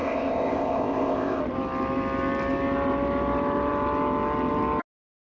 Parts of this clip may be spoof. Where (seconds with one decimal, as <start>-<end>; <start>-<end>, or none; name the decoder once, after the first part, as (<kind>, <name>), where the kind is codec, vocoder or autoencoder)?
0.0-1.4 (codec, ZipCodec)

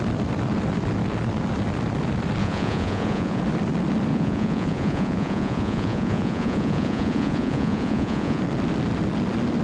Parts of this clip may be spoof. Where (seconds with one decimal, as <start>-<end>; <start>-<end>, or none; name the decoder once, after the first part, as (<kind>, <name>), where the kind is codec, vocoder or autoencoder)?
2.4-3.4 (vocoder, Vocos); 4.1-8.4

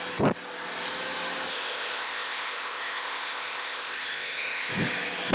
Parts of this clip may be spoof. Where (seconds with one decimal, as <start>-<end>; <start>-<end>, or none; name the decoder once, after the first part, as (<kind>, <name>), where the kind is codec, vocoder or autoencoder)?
1.5-4.7 (codec, ZipCodec)

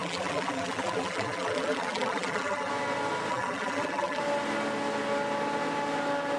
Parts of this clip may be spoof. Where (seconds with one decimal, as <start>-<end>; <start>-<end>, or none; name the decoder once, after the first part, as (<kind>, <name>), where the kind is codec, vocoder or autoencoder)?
0.0-2.7 (vocoder, BigVGAN v2); 3.3-4.2

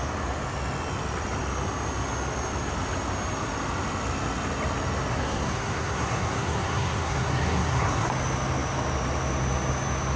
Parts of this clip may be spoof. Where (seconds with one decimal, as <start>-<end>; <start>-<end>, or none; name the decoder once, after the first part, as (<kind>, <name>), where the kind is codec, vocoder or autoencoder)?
5.1-8.1 (codec, SNAC)